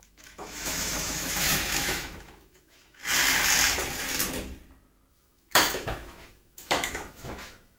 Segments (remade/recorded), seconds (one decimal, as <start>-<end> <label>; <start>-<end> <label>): 0.0-3.0 remade; 3.0-5.1 recorded; 5.1-7.8 remade